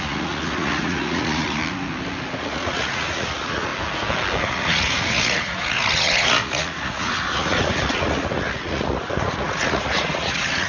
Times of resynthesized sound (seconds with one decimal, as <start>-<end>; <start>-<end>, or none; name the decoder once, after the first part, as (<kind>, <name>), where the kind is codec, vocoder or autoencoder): 0.0-1.6 (vocoder, Vocos); 2.4-3.7; 4.4-10.7